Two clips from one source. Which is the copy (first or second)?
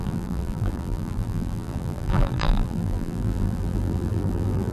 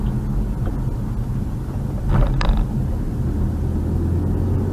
first